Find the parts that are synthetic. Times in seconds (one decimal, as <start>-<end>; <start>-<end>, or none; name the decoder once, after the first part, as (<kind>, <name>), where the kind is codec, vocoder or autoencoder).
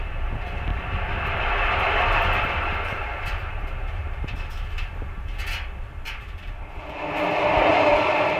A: 0.0-0.7 (vocoder, BigVGAN v2); 2.5-5.3; 7.7-8.4